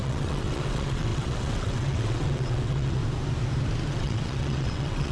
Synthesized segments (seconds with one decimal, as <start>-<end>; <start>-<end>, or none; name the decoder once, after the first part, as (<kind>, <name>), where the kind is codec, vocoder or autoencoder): 0.0-3.0 (vocoder, WaveNeXt); 3.9-5.1